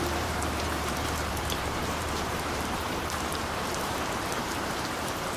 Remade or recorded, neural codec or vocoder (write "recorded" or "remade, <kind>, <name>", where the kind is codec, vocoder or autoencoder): remade, vocoder, BigVGAN v2